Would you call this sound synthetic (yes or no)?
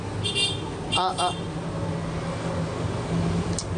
no